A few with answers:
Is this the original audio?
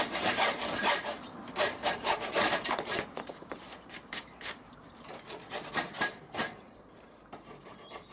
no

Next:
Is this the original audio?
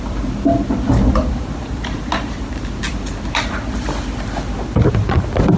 yes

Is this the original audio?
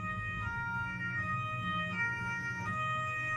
no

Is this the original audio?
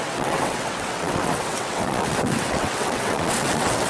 no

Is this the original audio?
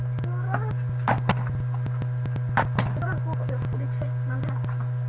yes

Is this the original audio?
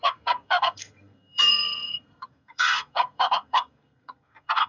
no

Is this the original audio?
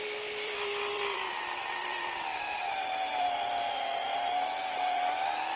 no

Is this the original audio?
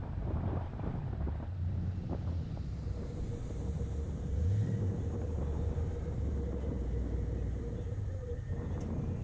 no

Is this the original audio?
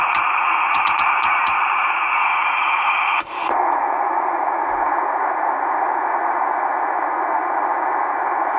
no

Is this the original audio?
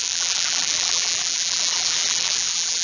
no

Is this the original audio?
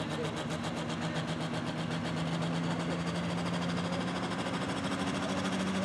yes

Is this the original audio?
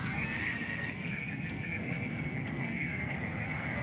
no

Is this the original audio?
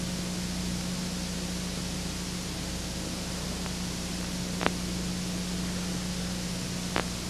yes